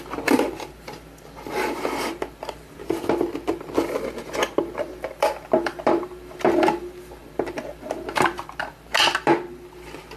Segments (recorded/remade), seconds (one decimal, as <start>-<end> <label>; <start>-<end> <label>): 0.0-10.2 remade